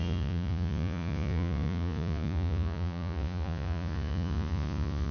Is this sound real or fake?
fake